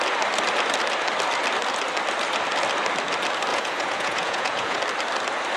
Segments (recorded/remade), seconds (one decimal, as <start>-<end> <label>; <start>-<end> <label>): 0.0-3.5 recorded; 3.5-4.8 remade; 4.8-5.6 recorded